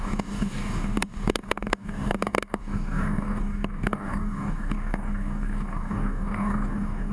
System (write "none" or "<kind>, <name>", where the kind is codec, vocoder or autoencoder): codec, DAC